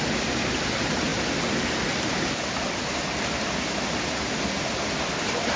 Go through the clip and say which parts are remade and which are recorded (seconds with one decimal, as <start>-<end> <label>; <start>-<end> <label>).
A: 0.0-5.6 recorded